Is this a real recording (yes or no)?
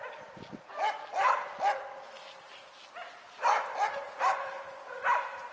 yes